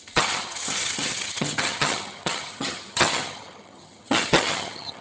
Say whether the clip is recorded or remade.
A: remade